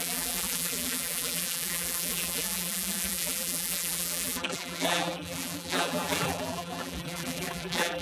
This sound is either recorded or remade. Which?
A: remade